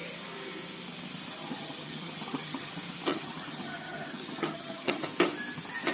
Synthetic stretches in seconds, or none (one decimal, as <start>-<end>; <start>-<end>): 1.4-2.7; 3.1-5.0